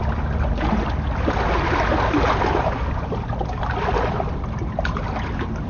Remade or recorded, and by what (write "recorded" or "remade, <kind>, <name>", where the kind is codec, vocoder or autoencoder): recorded